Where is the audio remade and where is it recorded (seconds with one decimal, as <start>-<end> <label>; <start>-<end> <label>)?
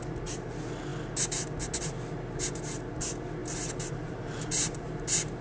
0.0-3.4 recorded; 3.4-5.0 remade; 5.0-5.4 recorded